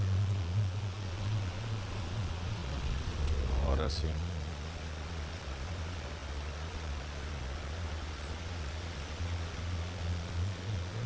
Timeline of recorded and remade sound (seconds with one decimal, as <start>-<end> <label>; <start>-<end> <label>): 0.0-11.1 remade